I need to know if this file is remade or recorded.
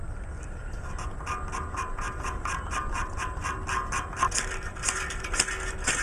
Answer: recorded